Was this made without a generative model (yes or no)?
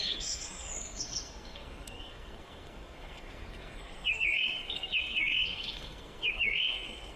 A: no